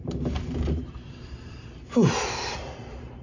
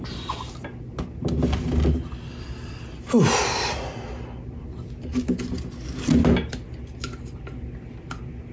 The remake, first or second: first